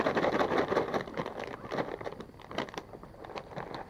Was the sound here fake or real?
fake